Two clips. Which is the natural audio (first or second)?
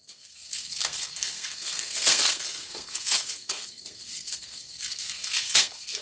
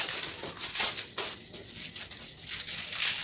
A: second